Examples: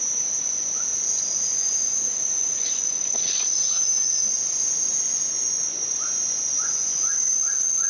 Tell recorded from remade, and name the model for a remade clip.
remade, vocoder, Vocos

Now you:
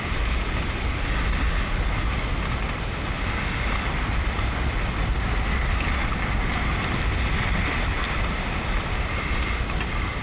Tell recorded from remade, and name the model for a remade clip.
recorded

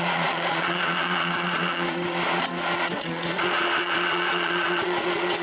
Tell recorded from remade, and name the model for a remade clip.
remade, vocoder, Vocos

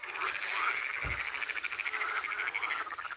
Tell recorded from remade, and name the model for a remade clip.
recorded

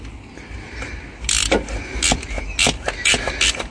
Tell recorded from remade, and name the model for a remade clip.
recorded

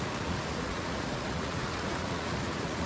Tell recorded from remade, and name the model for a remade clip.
remade, vocoder, Vocos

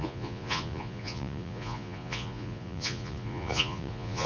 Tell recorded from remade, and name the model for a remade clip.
remade, vocoder, Vocos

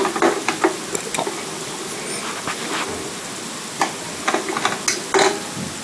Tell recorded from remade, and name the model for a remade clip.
recorded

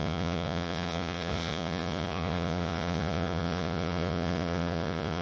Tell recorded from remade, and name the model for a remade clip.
remade, vocoder, Vocos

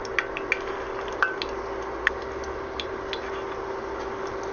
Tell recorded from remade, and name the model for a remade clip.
recorded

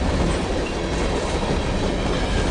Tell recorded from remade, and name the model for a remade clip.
recorded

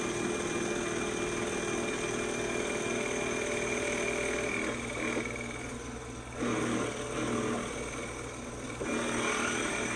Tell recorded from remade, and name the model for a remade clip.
recorded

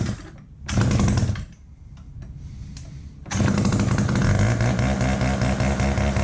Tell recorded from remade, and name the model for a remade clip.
recorded